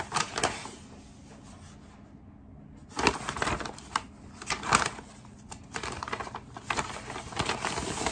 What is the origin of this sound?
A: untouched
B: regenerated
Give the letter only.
A